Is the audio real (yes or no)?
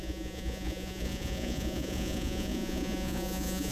no